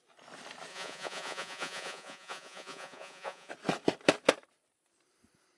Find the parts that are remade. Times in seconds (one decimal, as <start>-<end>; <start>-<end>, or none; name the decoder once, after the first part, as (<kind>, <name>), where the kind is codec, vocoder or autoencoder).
0.7-3.5 (vocoder, Vocos)